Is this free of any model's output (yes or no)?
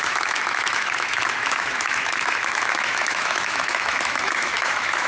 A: no